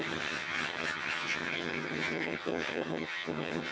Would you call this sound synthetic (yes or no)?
yes